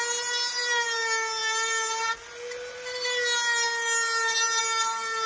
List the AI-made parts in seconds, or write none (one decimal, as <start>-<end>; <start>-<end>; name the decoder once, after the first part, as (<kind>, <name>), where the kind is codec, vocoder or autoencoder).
none